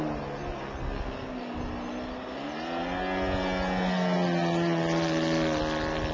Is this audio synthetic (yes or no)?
no